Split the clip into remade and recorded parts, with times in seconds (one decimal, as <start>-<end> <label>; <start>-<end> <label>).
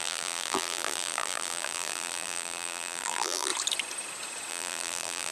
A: 0.0-3.5 remade; 3.5-4.5 recorded; 4.5-5.3 remade